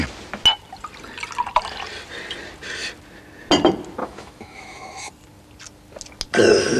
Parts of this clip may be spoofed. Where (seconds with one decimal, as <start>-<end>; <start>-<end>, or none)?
4.0-5.1